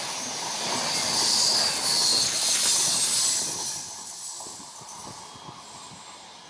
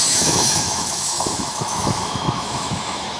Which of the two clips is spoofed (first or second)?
second